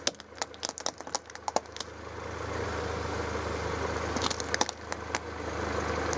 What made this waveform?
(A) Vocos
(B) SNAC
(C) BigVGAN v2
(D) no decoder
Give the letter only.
D